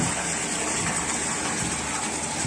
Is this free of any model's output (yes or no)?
yes